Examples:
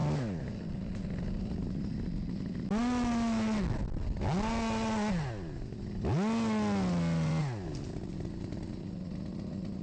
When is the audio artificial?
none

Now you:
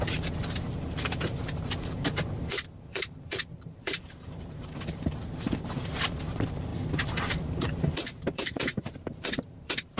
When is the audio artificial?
0.0-10.0

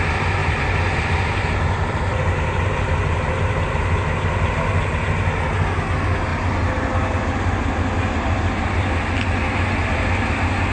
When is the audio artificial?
0.4-3.9

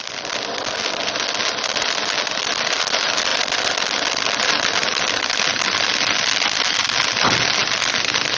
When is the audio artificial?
none

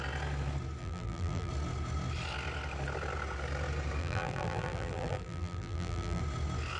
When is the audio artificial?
0.8-1.5; 4.0-6.2

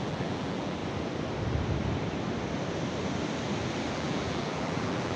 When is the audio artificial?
0.0-0.8; 3.9-5.2